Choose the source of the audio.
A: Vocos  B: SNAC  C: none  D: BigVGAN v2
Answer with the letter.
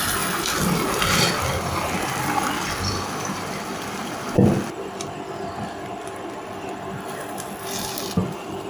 C